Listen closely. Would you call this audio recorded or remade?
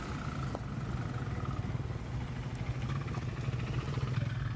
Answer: recorded